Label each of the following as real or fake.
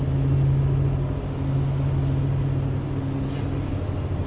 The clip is real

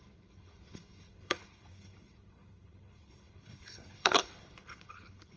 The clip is fake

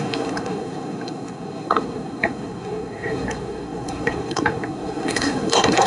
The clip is fake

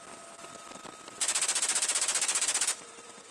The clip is real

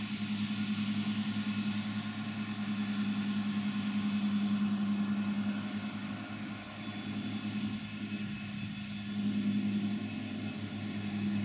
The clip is real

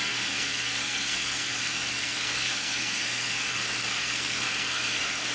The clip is fake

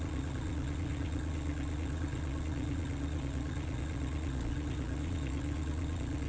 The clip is fake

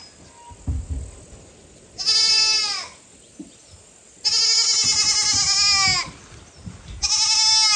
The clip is real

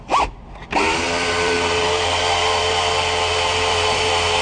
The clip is fake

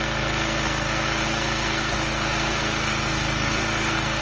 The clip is fake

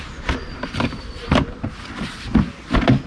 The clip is real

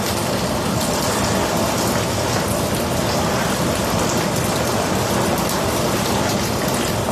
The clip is real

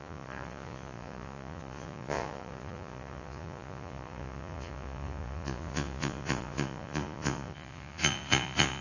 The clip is fake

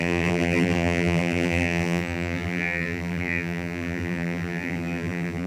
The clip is fake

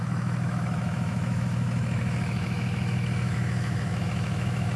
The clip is fake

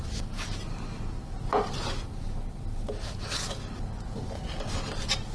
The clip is real